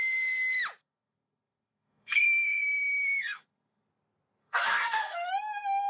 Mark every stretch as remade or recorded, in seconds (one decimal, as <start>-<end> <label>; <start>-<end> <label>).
0.0-0.8 recorded; 0.8-3.9 remade; 3.9-4.4 recorded; 4.4-5.3 remade; 5.3-5.9 recorded